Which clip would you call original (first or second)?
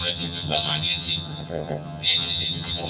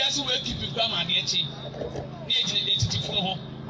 second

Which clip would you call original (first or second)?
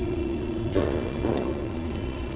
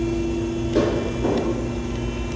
second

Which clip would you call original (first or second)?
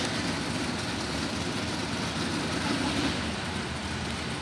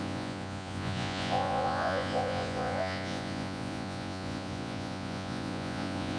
first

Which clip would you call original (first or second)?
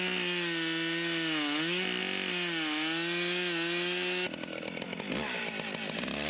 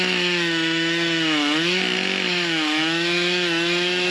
first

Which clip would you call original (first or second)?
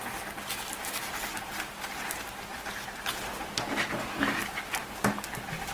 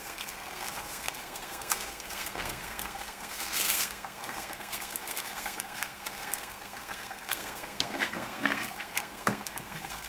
first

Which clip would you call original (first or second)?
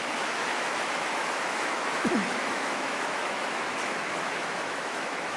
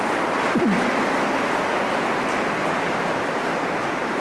second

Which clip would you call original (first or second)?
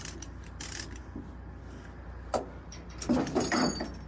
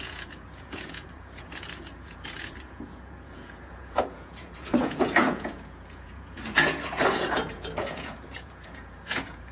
first